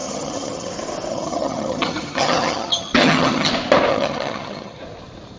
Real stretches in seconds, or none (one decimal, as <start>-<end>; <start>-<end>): 0.7-1.1; 3.5-3.9; 4.8-5.4